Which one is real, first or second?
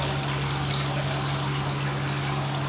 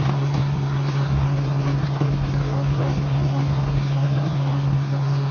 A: first